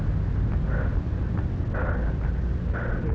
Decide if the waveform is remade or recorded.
recorded